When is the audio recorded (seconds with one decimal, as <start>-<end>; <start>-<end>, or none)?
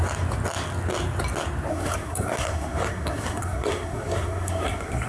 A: 0.0-1.7